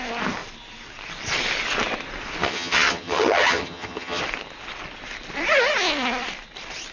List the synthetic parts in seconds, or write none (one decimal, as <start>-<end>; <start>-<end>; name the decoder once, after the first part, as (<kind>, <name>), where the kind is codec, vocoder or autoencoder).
2.4-4.2 (vocoder, HiFi-GAN)